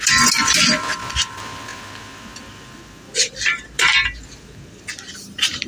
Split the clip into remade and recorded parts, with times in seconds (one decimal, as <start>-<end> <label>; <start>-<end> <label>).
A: 0.0-5.7 recorded

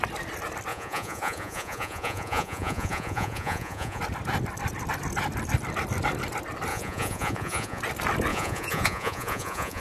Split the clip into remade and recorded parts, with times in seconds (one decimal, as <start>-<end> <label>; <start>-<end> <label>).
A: 0.0-0.7 recorded; 0.7-4.0 remade; 4.0-6.7 recorded; 6.7-7.8 remade; 7.8-8.3 recorded; 8.3-9.8 remade

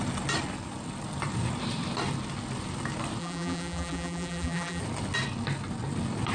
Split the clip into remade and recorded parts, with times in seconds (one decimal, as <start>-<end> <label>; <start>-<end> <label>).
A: 0.0-3.2 recorded; 3.2-4.8 remade; 4.8-6.3 recorded

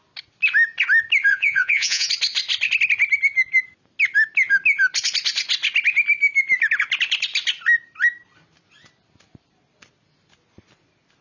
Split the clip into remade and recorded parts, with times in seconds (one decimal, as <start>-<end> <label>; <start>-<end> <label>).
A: 0.0-1.3 recorded; 1.3-2.1 remade; 2.1-11.2 recorded

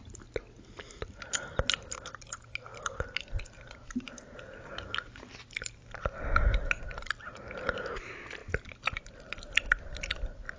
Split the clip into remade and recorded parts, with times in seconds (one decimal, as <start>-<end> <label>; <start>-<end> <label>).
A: 0.0-10.6 recorded

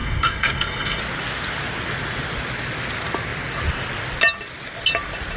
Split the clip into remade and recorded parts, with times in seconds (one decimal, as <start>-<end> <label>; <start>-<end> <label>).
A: 0.0-1.0 remade; 1.0-5.4 recorded

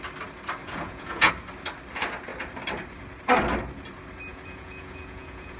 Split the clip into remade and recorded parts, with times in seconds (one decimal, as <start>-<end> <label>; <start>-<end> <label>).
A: 0.0-0.6 recorded; 0.6-1.3 remade; 1.3-4.3 recorded; 4.3-5.6 remade

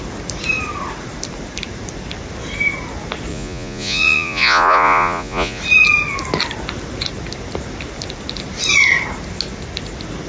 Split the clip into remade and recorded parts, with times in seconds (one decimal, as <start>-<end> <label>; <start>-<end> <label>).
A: 0.0-3.3 recorded; 3.3-5.6 remade; 5.6-10.3 recorded